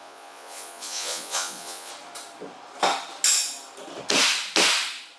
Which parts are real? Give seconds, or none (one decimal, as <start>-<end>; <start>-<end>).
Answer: 1.9-5.2